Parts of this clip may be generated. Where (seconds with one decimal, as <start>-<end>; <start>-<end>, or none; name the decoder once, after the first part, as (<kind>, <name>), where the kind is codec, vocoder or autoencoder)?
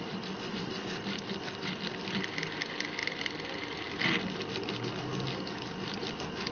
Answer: none